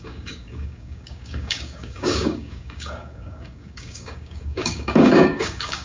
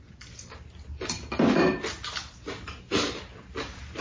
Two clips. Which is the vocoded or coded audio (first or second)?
first